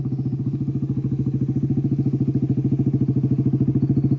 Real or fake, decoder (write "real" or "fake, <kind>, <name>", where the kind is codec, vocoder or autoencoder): real